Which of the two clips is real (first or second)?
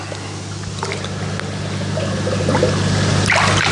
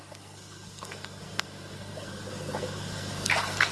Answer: first